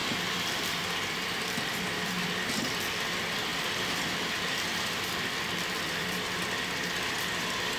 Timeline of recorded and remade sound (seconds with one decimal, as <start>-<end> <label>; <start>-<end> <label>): 0.0-2.2 remade; 2.2-3.5 recorded; 3.5-6.1 remade; 6.1-7.8 recorded